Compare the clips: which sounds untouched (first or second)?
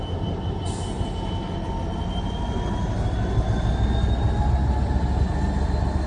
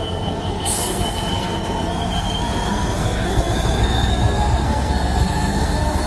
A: first